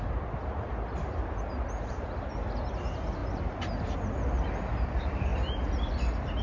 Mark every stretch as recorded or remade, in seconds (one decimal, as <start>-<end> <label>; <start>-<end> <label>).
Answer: 0.0-6.4 recorded